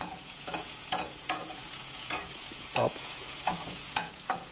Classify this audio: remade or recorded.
remade